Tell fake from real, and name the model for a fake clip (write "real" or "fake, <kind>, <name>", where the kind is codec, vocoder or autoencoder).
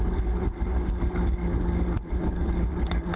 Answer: real